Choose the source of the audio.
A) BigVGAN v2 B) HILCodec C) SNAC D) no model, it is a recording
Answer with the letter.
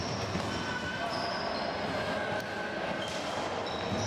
D